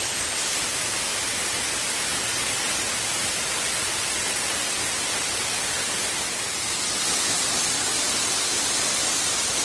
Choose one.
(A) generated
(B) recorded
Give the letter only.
B